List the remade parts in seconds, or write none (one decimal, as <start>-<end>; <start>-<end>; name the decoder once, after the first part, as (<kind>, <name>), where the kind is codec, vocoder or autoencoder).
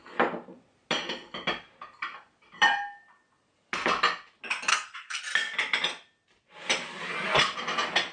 4.7-5.2 (codec, SNAC)